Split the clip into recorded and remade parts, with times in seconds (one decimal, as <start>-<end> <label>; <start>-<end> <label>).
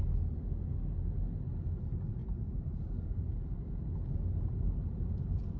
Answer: 0.0-2.2 recorded; 2.2-3.3 remade; 3.3-5.6 recorded